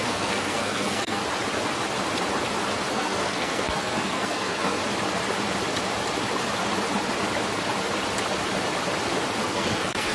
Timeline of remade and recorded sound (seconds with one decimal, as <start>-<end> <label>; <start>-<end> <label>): 0.0-1.2 remade; 1.2-2.9 recorded; 2.9-4.8 remade; 4.8-9.4 recorded; 9.4-10.1 remade